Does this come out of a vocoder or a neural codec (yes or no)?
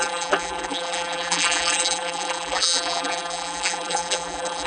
yes